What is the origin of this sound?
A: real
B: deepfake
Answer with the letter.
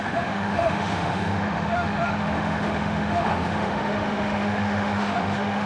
B